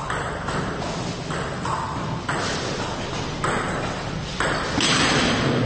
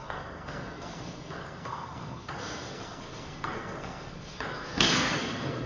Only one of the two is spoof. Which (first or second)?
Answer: second